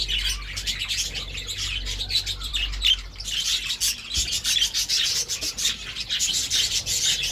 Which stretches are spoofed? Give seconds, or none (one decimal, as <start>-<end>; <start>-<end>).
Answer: none